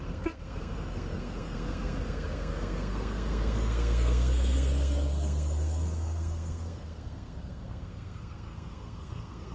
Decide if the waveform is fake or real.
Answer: fake